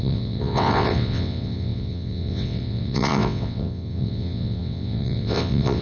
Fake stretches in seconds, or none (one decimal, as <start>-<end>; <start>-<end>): 0.0-5.8